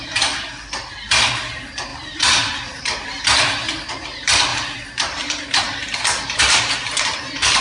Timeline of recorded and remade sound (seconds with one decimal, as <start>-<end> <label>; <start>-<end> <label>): 0.0-1.9 recorded; 1.9-3.9 remade; 3.9-4.5 recorded; 4.5-7.6 remade